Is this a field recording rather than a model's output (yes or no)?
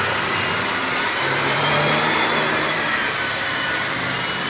no